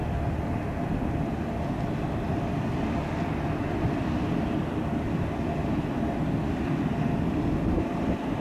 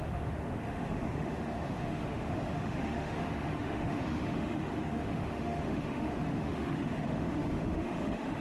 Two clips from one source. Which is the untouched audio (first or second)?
first